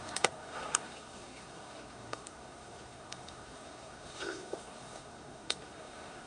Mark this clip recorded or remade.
remade